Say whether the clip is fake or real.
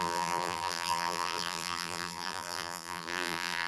fake